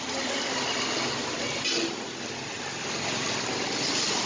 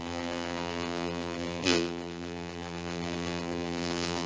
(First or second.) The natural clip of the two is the first